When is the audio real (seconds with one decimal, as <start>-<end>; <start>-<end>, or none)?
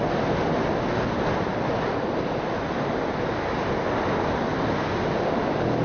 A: 0.0-5.8